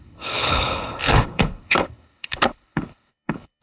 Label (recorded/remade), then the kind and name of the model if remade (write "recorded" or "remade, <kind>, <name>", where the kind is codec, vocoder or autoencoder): remade, codec, HILCodec